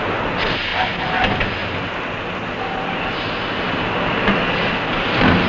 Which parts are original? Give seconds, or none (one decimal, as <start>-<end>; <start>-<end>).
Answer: 0.0-5.5